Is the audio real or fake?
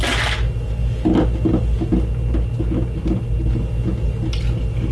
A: real